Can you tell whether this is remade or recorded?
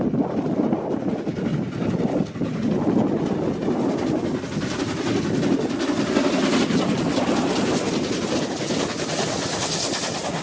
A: recorded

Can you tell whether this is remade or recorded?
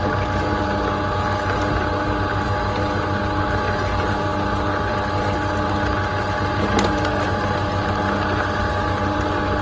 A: recorded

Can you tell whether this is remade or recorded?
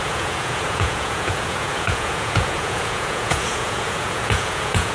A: remade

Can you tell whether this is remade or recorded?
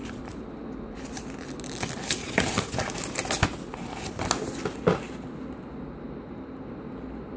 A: recorded